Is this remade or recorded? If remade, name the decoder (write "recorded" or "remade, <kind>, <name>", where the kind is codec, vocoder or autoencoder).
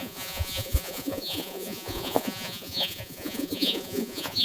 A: remade, vocoder, Vocos